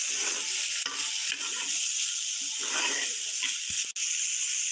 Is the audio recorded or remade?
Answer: recorded